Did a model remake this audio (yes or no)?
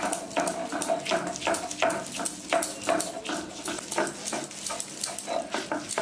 no